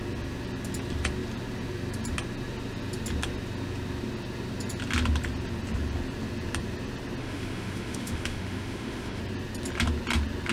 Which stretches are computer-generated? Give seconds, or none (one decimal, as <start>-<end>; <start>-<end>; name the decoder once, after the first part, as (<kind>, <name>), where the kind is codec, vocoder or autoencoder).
7.2-9.2 (autoencoder, DAC-VAE)